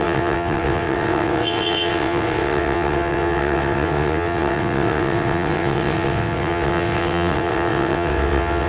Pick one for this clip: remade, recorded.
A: remade